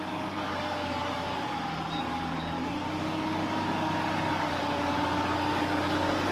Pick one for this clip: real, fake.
fake